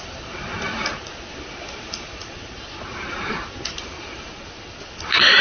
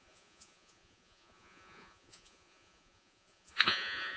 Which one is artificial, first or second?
second